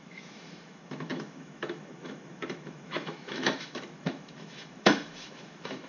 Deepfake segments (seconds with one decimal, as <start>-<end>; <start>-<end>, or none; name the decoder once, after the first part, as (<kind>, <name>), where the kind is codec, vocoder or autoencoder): 0.0-5.9 (autoencoder, DAC-VAE)